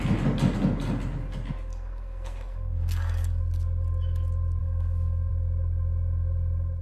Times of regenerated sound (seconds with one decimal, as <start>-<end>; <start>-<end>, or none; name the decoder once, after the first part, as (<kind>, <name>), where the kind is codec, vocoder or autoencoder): 1.7-3.4 (codec, SNAC); 4.6-5.3